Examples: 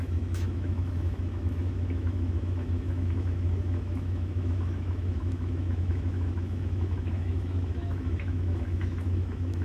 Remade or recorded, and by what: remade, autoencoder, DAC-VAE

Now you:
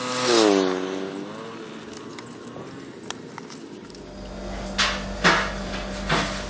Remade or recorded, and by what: recorded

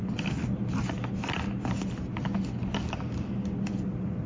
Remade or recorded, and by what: recorded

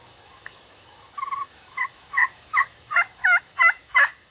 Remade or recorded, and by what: remade, autoencoder, DAC-VAE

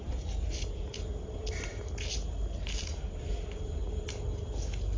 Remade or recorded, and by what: recorded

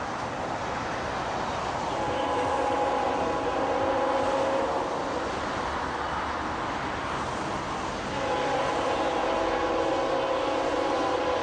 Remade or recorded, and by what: recorded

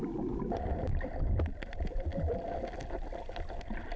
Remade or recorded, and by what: recorded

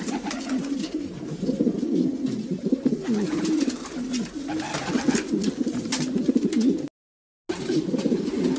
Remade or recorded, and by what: recorded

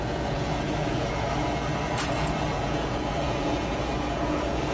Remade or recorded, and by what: remade, vocoder, Vocos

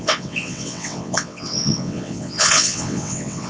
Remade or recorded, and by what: remade, vocoder, WaveNeXt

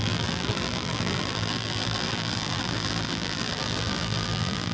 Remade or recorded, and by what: remade, vocoder, BigVGAN v2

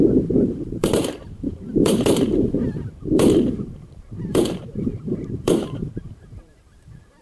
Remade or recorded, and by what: remade, vocoder, BigVGAN v2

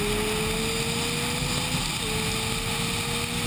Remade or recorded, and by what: recorded